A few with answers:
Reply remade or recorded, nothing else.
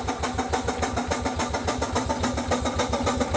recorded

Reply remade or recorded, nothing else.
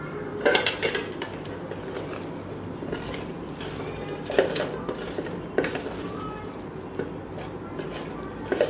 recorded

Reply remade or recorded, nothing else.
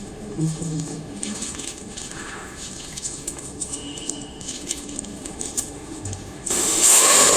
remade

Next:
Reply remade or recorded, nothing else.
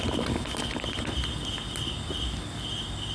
recorded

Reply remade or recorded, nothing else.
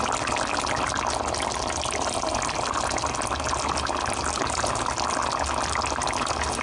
recorded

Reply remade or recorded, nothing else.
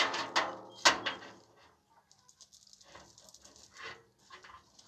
recorded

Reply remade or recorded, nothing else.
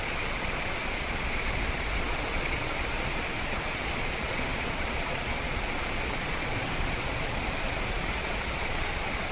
remade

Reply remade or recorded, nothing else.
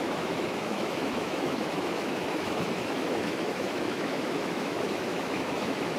remade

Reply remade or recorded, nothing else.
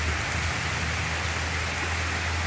recorded